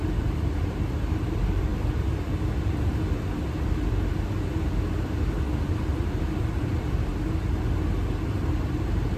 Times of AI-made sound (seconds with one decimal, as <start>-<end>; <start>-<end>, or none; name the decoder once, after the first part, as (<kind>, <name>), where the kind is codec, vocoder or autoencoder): 0.0-1.7 (vocoder, BigVGAN v2); 5.7-7.1; 8.3-9.2